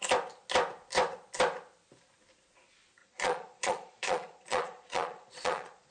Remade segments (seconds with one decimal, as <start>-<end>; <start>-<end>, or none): 3.0-5.9